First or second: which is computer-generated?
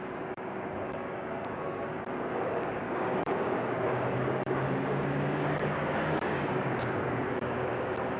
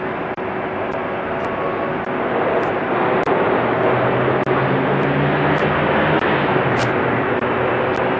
first